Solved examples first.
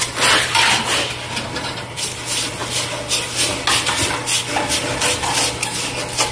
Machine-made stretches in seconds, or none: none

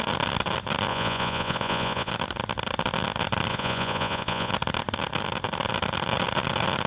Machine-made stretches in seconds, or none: 0.9-2.1 (vocoder, Vocos); 3.5-4.5

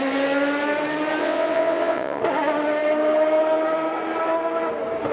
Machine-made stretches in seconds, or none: 1.2-2.2 (vocoder, WaveNeXt)

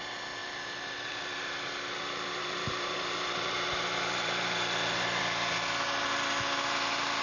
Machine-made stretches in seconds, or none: 0.4-1.7 (vocoder, BigVGAN v2); 2.4-5.2